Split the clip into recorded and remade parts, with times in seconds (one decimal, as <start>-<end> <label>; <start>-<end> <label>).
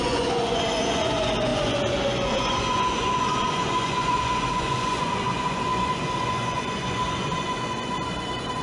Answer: 0.0-8.6 remade